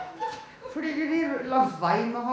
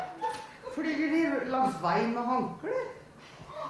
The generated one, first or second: first